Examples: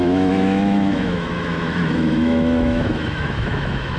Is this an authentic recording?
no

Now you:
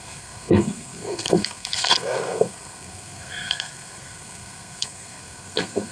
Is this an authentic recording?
no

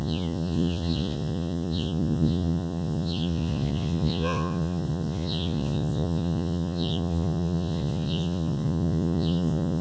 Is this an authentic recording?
no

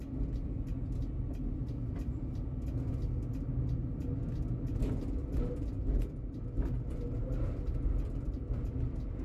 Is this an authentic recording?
yes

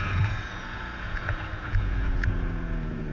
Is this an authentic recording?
no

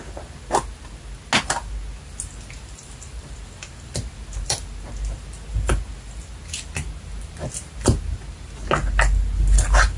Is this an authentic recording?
yes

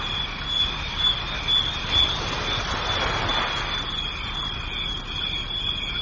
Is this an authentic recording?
yes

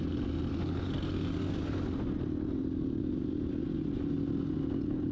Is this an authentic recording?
yes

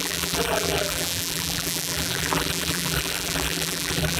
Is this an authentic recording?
no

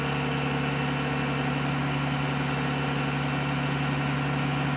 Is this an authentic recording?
yes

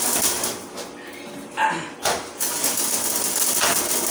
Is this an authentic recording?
yes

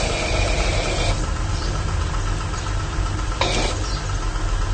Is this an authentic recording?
yes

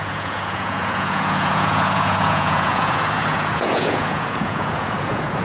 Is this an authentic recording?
no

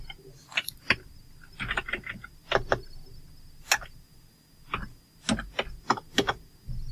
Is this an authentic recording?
yes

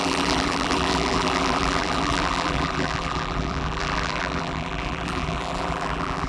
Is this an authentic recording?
no